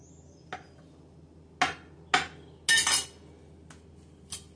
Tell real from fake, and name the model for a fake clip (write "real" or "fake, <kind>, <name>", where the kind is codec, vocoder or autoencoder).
real